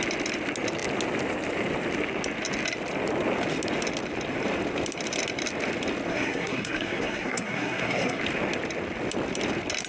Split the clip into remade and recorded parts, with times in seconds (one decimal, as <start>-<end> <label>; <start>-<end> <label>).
0.0-6.1 recorded; 6.1-8.2 remade; 8.2-9.9 recorded